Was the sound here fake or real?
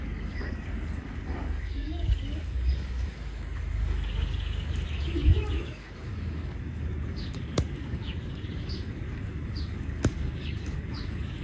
fake